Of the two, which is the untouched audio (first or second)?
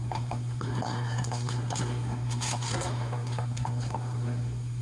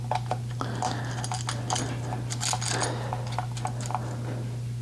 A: second